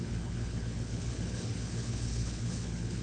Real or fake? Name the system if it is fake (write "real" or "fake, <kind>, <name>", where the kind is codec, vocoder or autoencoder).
fake, codec, HILCodec